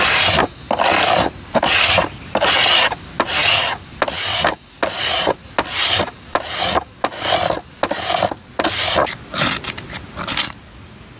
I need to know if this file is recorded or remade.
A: recorded